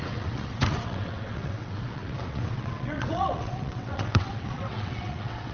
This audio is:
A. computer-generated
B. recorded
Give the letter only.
A